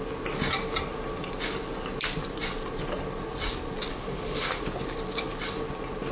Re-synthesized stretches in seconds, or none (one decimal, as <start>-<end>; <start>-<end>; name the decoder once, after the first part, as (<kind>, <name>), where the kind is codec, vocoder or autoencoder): 3.9-4.6 (autoencoder, DAC-VAE)